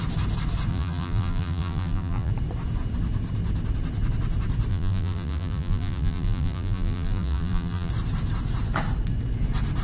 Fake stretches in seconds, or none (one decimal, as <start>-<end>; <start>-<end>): 0.7-2.3; 4.7-7.9